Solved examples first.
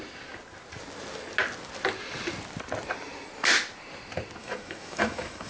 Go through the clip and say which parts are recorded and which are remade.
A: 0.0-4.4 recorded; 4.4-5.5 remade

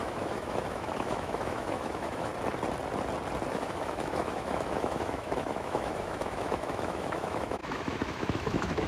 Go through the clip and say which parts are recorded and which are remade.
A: 0.0-2.3 remade; 2.3-3.5 recorded; 3.5-8.9 remade

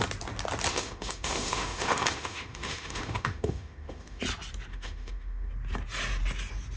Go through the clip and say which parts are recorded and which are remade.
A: 0.0-0.7 recorded; 0.7-4.2 remade; 4.2-4.7 recorded; 4.7-5.5 remade; 5.5-6.8 recorded

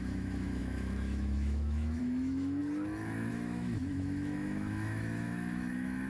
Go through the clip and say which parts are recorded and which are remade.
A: 0.0-2.6 remade; 2.6-3.3 recorded; 3.3-6.1 remade

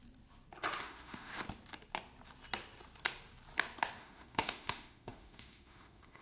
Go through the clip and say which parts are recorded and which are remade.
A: 0.0-0.8 recorded; 0.8-1.3 remade; 1.3-4.0 recorded; 4.0-6.2 remade